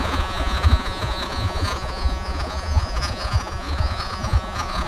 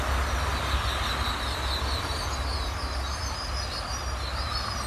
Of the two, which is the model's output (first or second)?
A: first